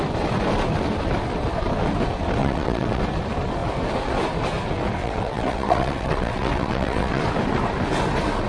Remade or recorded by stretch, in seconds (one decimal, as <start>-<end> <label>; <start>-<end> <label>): 0.0-2.4 recorded; 2.4-3.0 remade; 3.0-5.0 recorded; 5.0-7.2 remade; 7.2-8.5 recorded